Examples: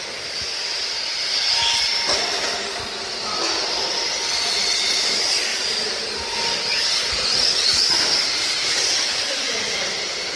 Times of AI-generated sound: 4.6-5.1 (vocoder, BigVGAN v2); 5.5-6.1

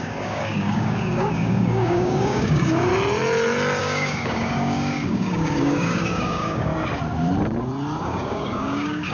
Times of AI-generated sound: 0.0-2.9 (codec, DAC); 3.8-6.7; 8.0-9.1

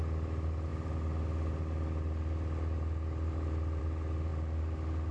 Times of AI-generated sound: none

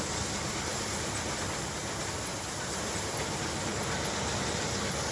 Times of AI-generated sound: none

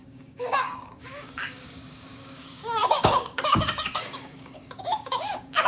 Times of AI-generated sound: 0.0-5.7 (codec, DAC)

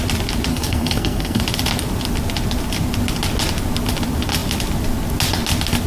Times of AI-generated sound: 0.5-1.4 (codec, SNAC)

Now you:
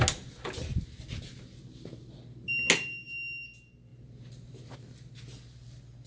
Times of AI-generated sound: none